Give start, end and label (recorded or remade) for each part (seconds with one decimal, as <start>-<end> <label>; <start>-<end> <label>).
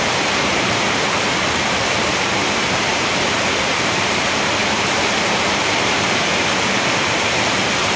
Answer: 0.0-8.0 remade